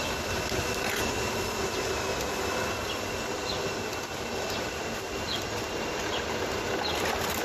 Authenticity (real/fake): real